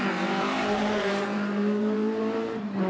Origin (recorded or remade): remade